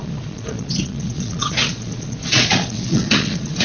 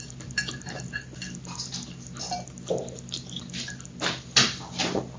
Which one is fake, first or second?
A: first